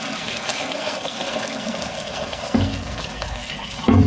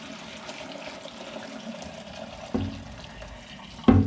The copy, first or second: first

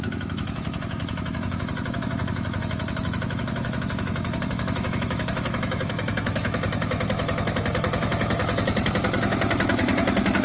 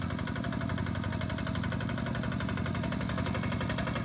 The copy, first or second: first